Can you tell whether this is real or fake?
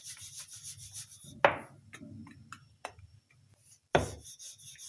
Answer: real